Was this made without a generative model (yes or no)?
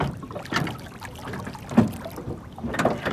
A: yes